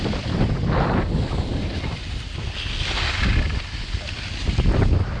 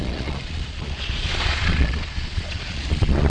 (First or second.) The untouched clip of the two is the first